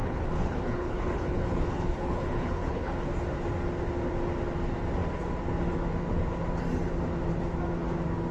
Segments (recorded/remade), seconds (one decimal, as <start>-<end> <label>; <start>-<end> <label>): 0.0-3.1 remade; 3.1-8.3 recorded